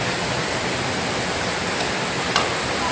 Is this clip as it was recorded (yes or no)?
yes